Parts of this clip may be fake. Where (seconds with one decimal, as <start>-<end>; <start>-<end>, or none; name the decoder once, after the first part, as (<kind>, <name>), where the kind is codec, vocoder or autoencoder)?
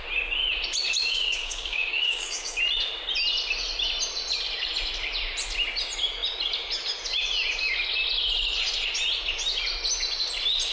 1.0-2.6 (codec, DAC)